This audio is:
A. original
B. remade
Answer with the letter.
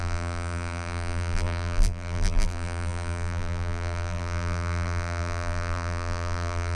B